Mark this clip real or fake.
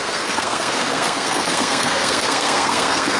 fake